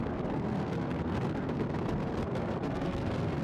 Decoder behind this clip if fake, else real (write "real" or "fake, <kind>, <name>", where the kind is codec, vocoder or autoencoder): fake, codec, SNAC